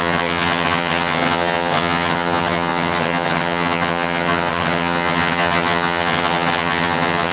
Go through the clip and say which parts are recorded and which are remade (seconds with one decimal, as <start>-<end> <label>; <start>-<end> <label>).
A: 0.0-7.3 remade